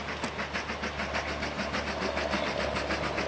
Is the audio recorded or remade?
recorded